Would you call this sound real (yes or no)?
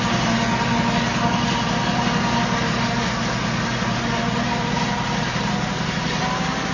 yes